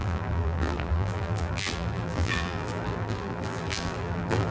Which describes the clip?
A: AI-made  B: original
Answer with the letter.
A